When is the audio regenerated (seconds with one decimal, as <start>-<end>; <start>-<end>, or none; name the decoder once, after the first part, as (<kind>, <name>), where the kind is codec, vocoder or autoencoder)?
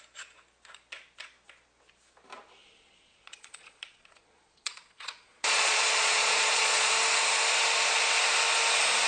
2.6-6.9 (vocoder, Vocos)